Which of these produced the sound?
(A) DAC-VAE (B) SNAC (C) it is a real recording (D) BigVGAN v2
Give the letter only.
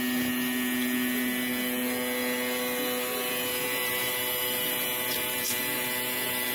C